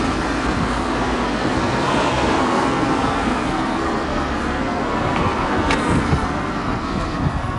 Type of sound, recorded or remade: remade